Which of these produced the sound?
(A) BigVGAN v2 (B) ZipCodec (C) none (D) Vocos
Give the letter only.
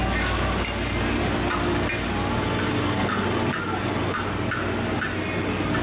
C